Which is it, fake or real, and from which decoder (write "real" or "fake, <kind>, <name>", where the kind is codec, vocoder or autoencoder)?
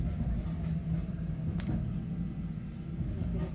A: real